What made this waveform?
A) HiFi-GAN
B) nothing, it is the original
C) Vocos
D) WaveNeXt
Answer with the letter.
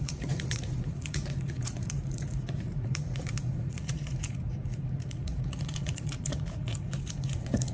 C